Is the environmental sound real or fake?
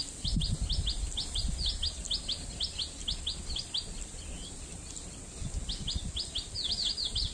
real